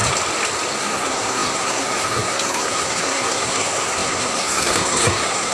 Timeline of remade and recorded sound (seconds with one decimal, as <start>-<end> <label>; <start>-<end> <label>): 0.0-0.8 recorded; 0.8-5.5 remade